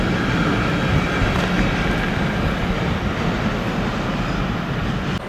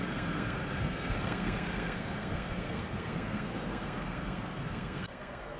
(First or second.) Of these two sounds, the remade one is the second